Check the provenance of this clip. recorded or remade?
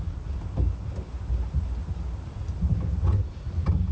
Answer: recorded